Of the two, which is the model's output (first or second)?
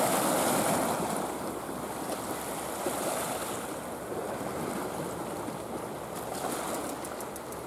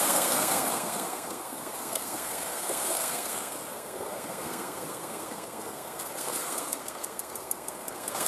second